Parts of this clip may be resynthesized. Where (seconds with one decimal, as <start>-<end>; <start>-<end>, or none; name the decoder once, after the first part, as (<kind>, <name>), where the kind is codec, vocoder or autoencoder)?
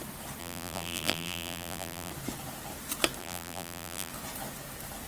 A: 0.4-2.1 (vocoder, BigVGAN v2); 3.2-4.1